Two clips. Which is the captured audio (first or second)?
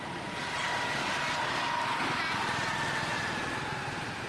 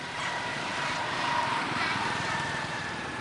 first